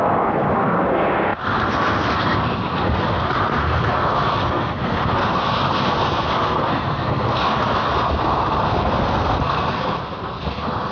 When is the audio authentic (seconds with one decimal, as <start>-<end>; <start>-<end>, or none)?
none